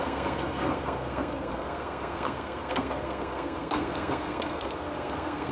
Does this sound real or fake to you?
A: fake